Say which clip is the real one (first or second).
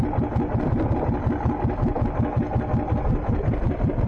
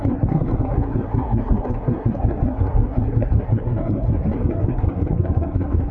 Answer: first